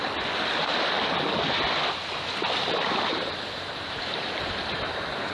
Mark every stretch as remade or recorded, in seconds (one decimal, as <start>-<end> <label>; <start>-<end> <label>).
0.0-3.1 recorded; 3.1-4.8 remade; 4.8-5.3 recorded

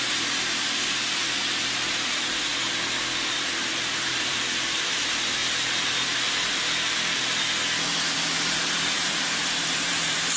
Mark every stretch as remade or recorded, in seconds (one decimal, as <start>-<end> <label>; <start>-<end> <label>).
0.0-2.5 remade; 2.5-3.3 recorded; 3.3-5.4 remade; 5.4-9.5 recorded; 9.5-10.4 remade

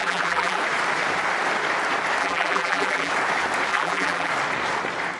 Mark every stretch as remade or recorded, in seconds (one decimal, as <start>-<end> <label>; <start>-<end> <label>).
0.0-0.6 remade; 0.6-2.2 recorded; 2.2-3.1 remade; 3.1-3.7 recorded; 3.7-4.3 remade; 4.3-5.2 recorded

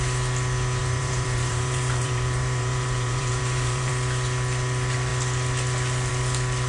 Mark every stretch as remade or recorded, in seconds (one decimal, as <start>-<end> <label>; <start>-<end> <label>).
0.0-0.8 recorded; 0.8-3.9 remade; 3.9-6.7 recorded